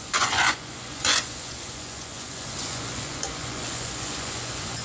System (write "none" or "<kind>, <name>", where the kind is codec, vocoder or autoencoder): vocoder, Vocos